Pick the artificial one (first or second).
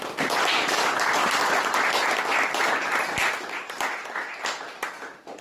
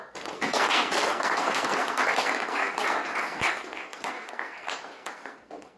second